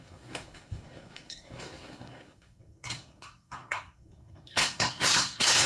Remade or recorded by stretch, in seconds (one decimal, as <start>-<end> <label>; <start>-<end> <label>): 0.0-5.7 remade